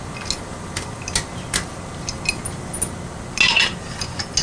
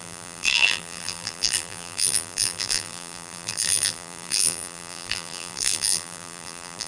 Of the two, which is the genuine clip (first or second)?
first